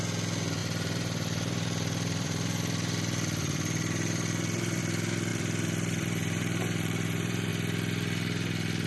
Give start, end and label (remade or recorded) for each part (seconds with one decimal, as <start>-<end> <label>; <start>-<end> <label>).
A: 0.0-0.6 recorded; 0.6-4.8 remade; 4.8-5.3 recorded; 5.3-7.5 remade; 7.5-8.9 recorded